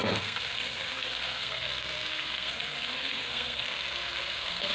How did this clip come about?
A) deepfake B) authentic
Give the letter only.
A